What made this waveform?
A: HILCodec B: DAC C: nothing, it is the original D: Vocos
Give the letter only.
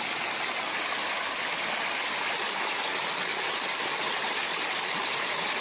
C